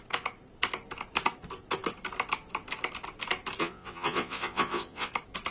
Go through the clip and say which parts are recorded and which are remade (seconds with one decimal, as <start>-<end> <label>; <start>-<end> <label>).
0.0-3.6 recorded; 3.6-5.1 remade; 5.1-5.5 recorded